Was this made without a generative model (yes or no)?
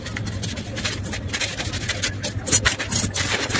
yes